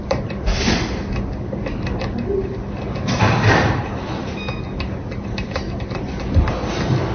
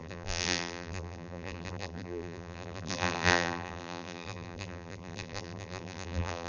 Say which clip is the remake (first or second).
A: second